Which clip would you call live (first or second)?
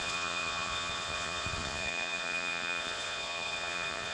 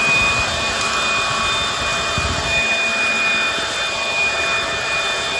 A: second